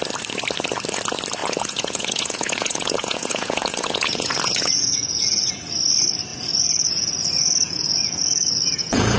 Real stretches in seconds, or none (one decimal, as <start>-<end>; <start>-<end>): 0.0-1.4; 5.6-6.3